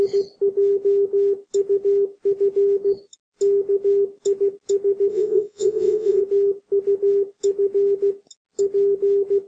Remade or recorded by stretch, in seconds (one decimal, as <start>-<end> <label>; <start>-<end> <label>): 0.0-5.1 recorded; 5.1-6.2 remade; 6.2-9.5 recorded